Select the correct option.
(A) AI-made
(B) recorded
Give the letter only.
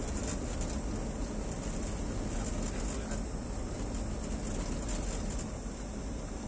B